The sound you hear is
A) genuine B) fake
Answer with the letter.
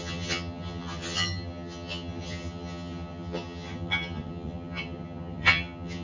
B